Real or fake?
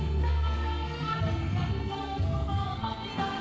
fake